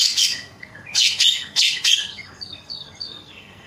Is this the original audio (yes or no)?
no